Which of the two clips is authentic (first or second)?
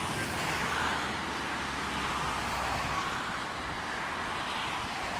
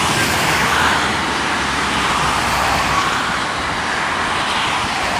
first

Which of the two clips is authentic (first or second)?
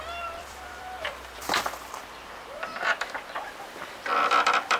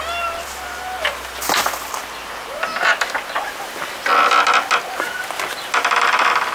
second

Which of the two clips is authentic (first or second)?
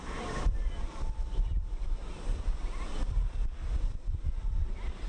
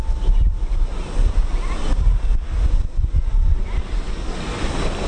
second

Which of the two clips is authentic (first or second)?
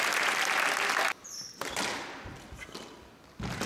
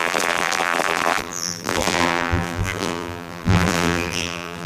first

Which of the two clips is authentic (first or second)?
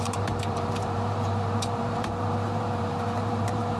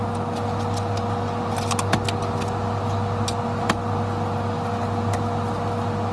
second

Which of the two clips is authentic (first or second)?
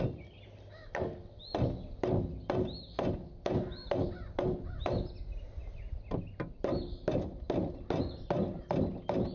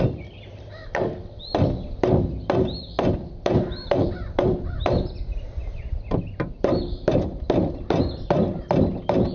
first